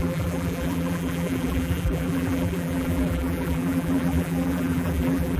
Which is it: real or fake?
fake